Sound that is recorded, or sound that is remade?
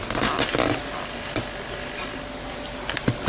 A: recorded